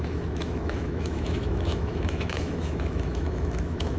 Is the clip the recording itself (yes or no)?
no